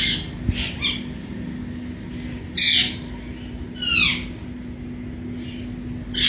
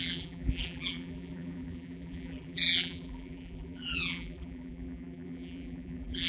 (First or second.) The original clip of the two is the first